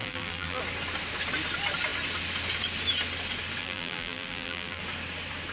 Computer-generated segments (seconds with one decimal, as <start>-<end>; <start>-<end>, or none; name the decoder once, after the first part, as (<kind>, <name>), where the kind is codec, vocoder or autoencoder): 0.0-0.6 (vocoder, BigVGAN v2); 3.6-4.8